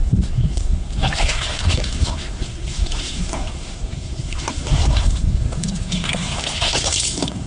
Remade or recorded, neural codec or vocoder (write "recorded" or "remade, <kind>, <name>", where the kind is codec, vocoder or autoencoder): remade, codec, SNAC